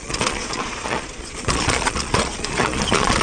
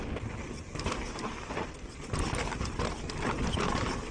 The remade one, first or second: first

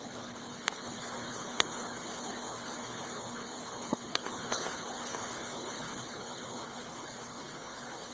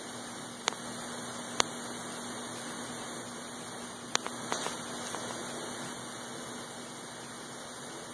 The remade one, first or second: first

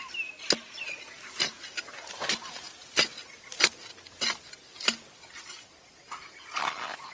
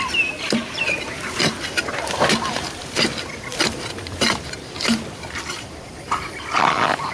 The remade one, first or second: second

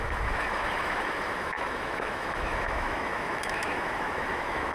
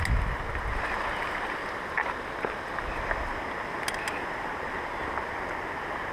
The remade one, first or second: first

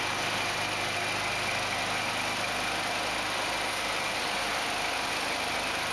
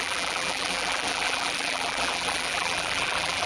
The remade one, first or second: second